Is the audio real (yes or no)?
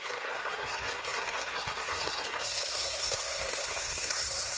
no